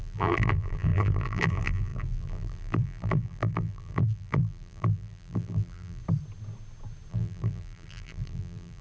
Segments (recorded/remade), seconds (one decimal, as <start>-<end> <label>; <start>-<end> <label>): 0.0-6.0 remade; 6.0-7.1 recorded; 7.1-8.8 remade